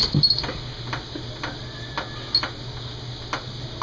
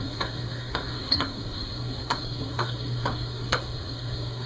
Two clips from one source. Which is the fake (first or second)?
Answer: second